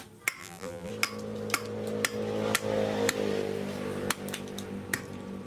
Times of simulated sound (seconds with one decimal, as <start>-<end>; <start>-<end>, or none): 0.4-0.9